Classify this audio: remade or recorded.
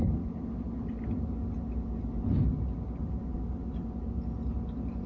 recorded